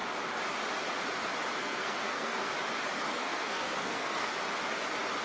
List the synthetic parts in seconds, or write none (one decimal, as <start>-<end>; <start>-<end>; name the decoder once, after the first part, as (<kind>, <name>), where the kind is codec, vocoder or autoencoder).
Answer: 1.6-2.5 (codec, SNAC); 3.1-4.3